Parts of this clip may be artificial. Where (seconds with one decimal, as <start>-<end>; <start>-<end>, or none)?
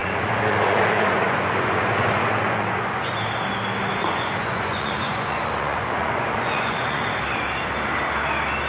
0.0-3.1; 4.0-7.0